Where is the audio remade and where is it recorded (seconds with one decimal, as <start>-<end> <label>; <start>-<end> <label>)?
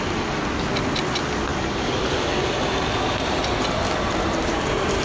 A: 0.0-5.0 recorded